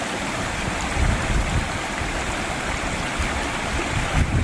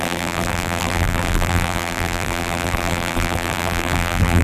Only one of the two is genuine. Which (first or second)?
first